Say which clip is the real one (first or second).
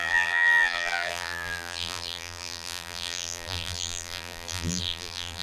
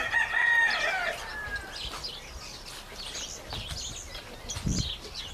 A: second